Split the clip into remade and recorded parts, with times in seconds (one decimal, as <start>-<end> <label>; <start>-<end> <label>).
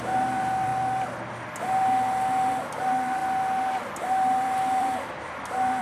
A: 0.0-0.7 remade; 0.7-2.7 recorded; 2.7-3.2 remade; 3.2-4.1 recorded; 4.1-5.8 remade